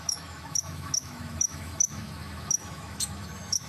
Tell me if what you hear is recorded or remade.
remade